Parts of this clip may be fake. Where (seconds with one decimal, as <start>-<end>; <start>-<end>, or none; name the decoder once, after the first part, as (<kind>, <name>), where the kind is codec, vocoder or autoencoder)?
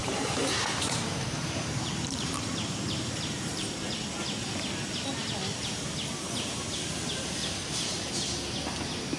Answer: 0.0-3.8 (vocoder, BigVGAN v2)